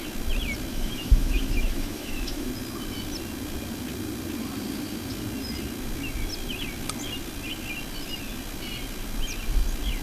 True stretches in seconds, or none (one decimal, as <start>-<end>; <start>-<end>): 0.0-0.7; 2.5-10.0